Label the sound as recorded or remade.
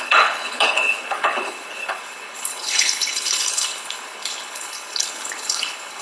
remade